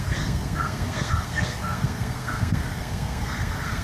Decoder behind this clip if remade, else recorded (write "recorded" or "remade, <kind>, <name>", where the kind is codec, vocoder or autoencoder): remade, codec, SNAC